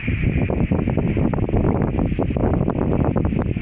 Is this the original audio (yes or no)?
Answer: yes